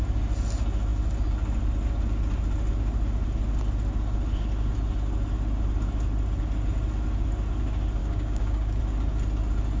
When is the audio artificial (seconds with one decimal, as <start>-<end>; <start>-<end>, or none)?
8.0-8.8

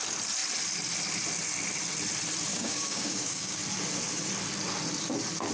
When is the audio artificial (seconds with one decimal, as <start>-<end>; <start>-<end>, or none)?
2.5-3.6